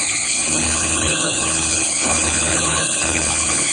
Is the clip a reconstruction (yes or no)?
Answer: yes